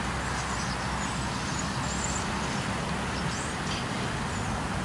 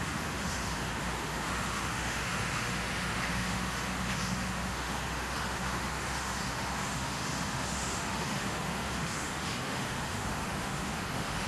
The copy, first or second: second